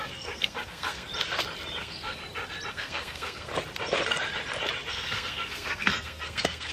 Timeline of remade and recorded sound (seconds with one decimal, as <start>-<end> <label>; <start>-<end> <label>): 0.0-1.1 remade; 1.1-1.8 recorded; 1.8-2.2 remade; 2.2-2.7 recorded; 2.7-3.5 remade; 3.5-4.9 recorded; 4.9-6.7 remade